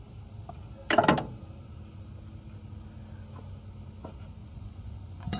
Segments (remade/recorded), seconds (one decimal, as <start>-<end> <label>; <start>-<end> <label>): 0.0-4.4 recorded; 4.4-5.4 remade